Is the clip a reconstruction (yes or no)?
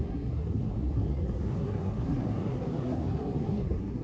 yes